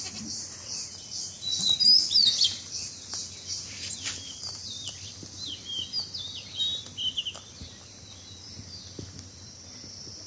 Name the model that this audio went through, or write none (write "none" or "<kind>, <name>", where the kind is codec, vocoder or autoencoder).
none